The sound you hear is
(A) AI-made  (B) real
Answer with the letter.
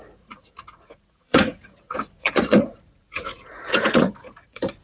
A